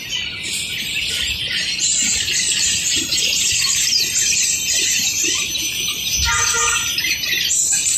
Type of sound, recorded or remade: recorded